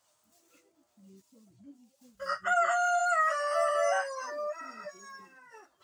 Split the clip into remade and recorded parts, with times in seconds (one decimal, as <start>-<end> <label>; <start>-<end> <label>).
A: 0.0-5.8 recorded